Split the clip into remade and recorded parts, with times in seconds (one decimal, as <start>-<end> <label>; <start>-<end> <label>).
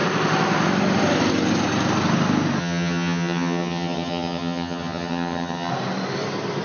0.0-2.6 recorded; 2.6-5.7 remade; 5.7-6.6 recorded